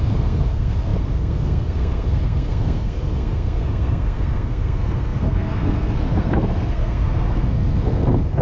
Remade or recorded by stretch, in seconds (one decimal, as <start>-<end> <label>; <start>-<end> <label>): 0.0-8.4 remade